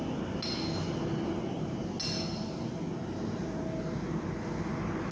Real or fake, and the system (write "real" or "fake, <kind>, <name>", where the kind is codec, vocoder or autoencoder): real